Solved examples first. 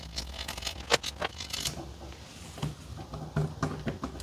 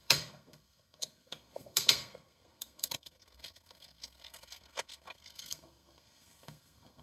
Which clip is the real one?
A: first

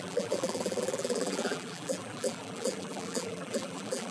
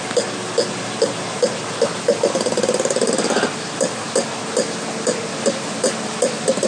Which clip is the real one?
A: second